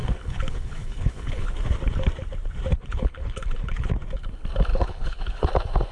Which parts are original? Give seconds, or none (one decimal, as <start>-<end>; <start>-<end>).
1.5-2.7; 3.9-4.7; 5.5-5.9